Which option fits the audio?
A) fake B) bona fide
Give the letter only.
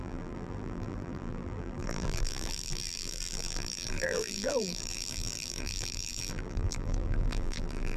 A